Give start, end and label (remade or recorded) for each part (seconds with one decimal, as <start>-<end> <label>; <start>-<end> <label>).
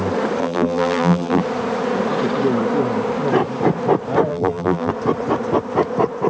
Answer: 0.0-0.4 recorded; 0.4-1.4 remade; 1.4-4.3 recorded; 4.3-4.9 remade; 4.9-6.3 recorded